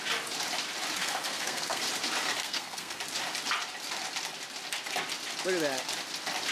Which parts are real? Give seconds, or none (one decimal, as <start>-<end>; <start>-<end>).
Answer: 0.0-1.0; 1.8-2.4; 3.0-6.5